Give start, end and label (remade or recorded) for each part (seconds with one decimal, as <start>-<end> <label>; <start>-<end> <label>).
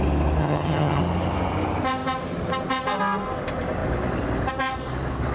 0.0-0.4 recorded; 0.4-1.0 remade; 1.0-5.3 recorded